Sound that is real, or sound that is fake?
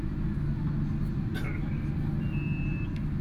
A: real